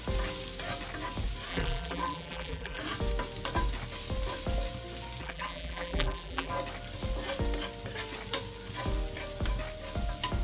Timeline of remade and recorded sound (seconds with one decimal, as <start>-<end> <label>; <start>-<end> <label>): 0.0-1.5 recorded; 1.5-2.8 remade; 2.8-5.2 recorded; 5.2-6.5 remade; 6.5-10.4 recorded

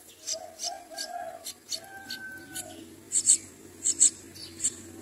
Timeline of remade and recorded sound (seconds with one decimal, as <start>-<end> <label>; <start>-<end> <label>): 0.0-5.0 recorded